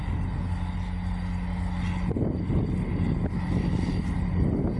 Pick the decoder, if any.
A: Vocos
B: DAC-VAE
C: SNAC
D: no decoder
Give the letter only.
D